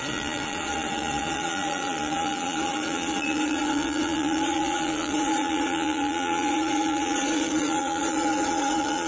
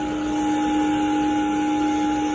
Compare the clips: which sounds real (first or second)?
second